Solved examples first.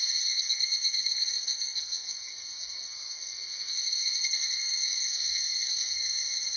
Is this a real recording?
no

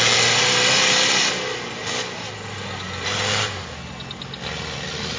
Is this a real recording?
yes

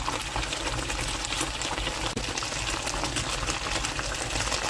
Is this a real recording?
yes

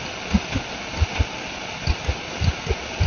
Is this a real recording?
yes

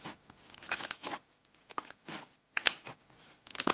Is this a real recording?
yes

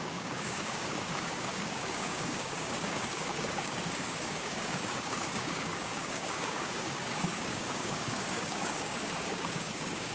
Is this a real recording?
no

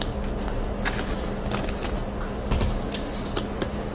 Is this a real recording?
yes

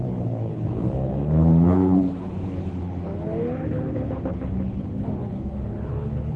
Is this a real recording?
no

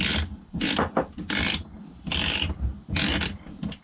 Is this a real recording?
yes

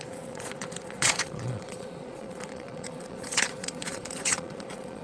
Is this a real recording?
no